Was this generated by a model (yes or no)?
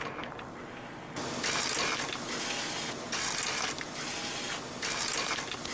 no